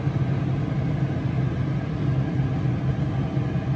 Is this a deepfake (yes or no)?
no